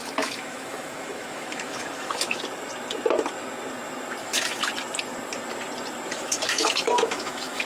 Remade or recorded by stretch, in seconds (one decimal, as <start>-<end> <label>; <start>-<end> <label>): 0.0-2.4 remade; 2.4-4.2 recorded; 4.2-4.7 remade; 4.7-6.1 recorded; 6.1-7.6 remade

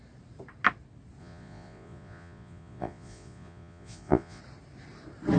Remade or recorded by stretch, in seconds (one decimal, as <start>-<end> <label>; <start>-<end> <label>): 0.0-1.2 recorded; 1.2-4.4 remade; 4.4-5.4 recorded

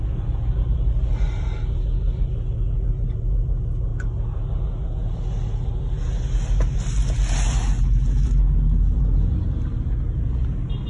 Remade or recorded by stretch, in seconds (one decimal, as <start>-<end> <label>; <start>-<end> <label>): 0.0-10.9 recorded

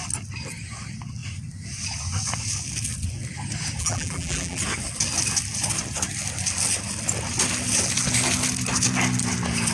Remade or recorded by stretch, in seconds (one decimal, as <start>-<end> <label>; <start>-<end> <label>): 0.0-3.8 recorded; 3.8-4.6 remade; 4.6-9.7 recorded